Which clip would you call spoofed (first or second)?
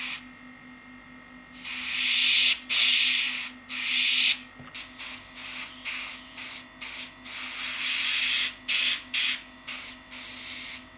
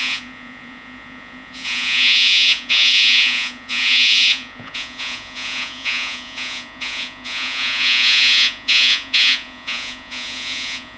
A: second